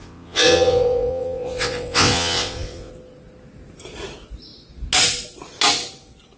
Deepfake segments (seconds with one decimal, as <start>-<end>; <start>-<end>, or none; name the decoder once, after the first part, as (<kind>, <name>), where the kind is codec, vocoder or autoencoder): 0.0-2.9 (vocoder, WaveNeXt)